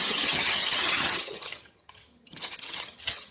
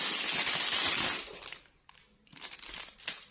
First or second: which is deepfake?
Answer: first